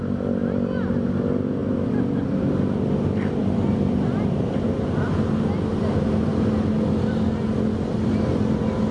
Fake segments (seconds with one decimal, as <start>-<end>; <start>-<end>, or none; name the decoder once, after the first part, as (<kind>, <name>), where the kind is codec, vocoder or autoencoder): 0.4-0.9 (vocoder, BigVGAN v2); 3.4-4.5